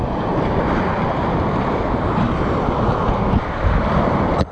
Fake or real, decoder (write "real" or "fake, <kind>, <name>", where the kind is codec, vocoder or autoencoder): real